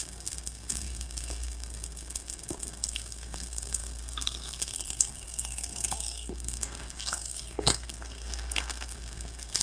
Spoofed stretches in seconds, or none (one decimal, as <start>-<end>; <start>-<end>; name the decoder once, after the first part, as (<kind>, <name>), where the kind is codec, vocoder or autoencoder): 0.0-9.6 (codec, SNAC)